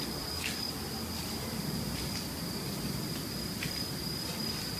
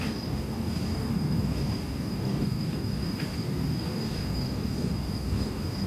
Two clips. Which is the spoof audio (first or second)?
second